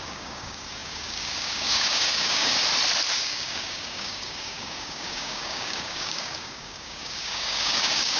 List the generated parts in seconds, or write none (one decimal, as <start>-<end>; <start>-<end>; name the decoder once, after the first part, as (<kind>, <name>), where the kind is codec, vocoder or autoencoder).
0.0-2.6 (codec, DAC); 3.1-8.2

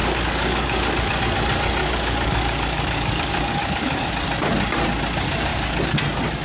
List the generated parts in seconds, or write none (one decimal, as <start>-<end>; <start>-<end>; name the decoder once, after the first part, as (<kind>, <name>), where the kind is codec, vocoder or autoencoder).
0.0-1.2 (codec, DAC); 1.8-4.1; 5.5-6.0

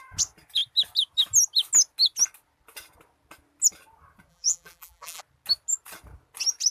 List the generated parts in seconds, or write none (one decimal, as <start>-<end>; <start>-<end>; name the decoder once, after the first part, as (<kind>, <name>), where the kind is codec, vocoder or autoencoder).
4.3-5.2 (vocoder, BigVGAN v2)

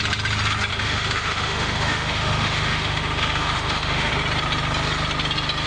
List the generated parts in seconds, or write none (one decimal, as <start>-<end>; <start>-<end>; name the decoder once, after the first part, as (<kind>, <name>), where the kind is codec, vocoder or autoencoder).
0.7-4.1 (autoencoder, DAC-VAE)

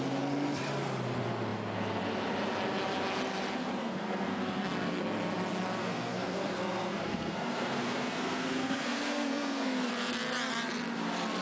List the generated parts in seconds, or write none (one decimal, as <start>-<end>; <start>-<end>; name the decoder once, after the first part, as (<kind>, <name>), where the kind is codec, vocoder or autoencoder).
3.8-5.0 (codec, SNAC); 5.8-9.9

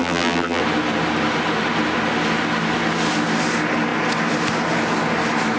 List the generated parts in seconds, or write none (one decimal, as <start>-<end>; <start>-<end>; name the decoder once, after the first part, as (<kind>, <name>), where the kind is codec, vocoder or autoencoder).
0.0-0.6 (vocoder, BigVGAN v2)

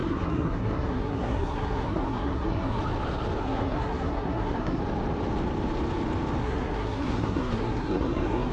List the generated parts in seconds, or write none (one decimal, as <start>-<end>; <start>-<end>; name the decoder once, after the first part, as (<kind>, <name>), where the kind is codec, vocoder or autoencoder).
0.0-2.8 (codec, SNAC); 3.4-4.8; 6.4-8.5

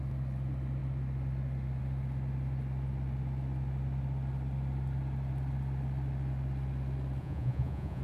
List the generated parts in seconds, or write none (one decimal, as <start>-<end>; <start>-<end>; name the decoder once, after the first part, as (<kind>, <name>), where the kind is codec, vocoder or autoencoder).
7.2-8.0 (vocoder, Vocos)